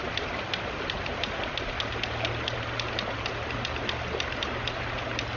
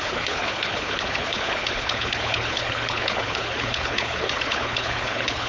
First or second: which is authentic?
first